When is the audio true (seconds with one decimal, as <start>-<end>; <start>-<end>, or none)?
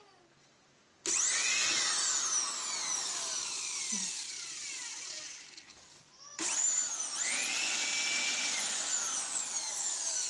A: 0.0-5.9; 6.5-8.2; 9.5-10.3